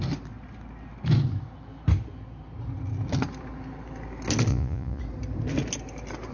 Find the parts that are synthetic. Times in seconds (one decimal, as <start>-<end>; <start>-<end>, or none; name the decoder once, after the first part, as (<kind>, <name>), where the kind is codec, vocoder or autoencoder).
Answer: 4.5-5.0 (vocoder, Vocos)